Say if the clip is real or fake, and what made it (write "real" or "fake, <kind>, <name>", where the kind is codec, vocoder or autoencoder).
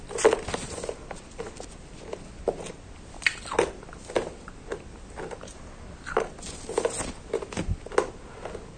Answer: real